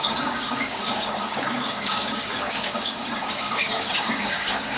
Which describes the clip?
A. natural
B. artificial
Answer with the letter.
B